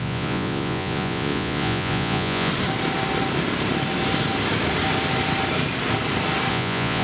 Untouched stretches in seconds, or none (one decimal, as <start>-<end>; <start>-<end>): 2.5-6.5